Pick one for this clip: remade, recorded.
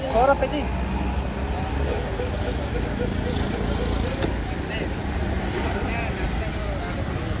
recorded